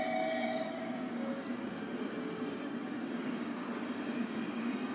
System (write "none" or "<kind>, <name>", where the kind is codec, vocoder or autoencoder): codec, DAC